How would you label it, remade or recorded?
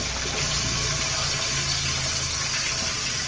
recorded